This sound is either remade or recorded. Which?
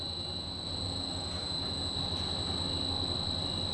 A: recorded